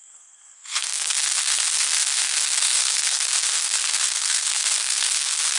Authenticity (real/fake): fake